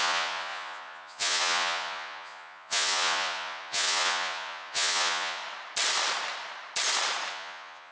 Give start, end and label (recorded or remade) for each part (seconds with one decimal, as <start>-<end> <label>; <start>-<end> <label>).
0.0-5.4 remade; 5.4-7.3 recorded; 7.3-7.9 remade